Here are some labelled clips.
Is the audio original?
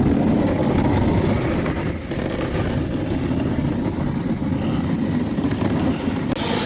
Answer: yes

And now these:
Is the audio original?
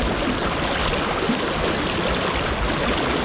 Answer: yes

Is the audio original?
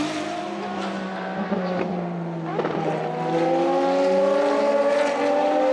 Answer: yes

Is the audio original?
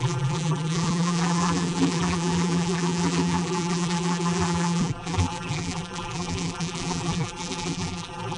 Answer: no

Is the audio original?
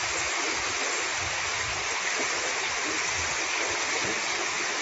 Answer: yes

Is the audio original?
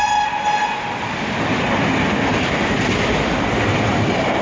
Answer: yes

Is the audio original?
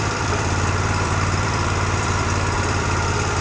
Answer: no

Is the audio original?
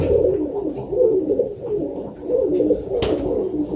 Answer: yes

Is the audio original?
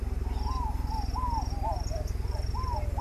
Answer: yes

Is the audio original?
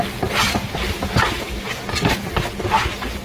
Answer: yes